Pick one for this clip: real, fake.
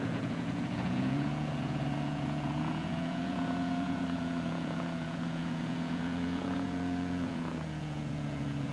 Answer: fake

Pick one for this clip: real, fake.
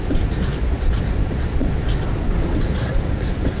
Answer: fake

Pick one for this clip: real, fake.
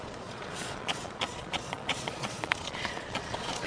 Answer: fake